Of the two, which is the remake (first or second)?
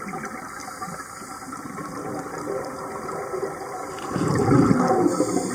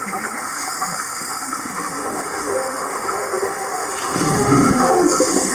second